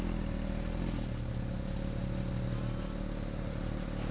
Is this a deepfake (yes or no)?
no